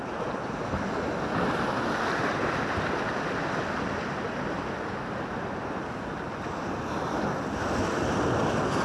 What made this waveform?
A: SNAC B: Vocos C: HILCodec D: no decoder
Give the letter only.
D